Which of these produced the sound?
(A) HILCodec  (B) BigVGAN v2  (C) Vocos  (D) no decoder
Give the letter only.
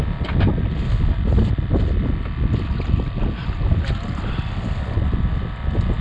D